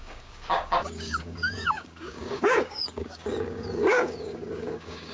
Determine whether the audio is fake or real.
fake